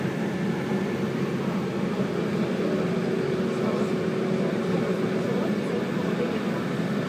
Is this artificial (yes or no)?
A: no